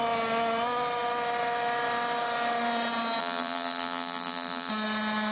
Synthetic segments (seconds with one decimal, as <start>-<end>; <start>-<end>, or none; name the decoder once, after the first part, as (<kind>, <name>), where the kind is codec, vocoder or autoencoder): 3.2-4.7 (vocoder, BigVGAN v2)